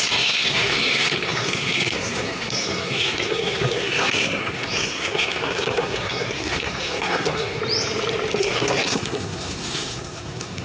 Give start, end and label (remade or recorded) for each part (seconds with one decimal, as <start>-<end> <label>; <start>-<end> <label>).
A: 0.0-7.6 remade; 7.6-8.4 recorded; 8.4-10.6 remade